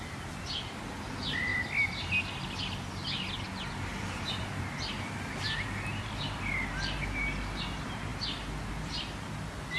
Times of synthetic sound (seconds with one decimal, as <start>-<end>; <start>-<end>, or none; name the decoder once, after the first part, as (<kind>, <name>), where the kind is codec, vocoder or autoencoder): 3.9-4.7 (vocoder, BigVGAN v2); 5.9-6.7